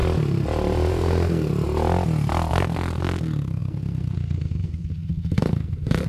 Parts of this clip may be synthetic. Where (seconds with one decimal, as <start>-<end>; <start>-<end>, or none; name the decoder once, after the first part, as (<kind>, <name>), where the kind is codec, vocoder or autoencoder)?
0.9-1.5 (codec, SNAC); 2.5-6.1